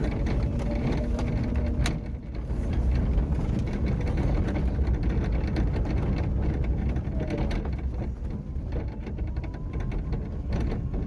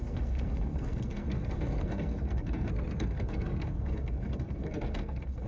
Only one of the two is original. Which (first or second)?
first